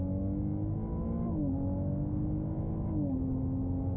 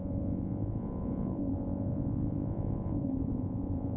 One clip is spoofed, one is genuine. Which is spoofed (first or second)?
second